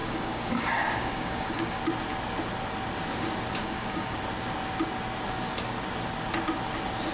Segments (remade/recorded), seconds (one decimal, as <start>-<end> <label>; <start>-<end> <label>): 0.0-1.8 remade; 1.8-3.6 recorded; 3.6-4.2 remade; 4.2-7.1 recorded

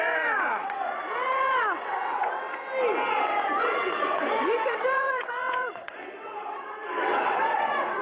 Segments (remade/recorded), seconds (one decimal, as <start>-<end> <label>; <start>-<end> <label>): 0.0-2.7 remade; 2.7-3.6 recorded; 3.6-8.0 remade

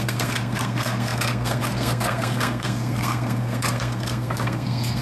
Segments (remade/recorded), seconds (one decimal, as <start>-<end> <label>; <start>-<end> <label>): 0.0-5.0 remade